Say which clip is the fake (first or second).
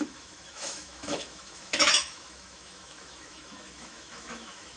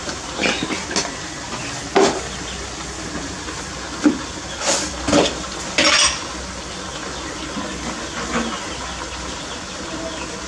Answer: first